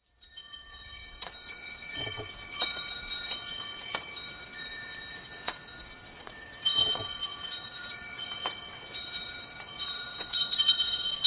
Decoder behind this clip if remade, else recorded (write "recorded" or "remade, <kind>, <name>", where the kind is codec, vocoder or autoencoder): remade, vocoder, WaveNeXt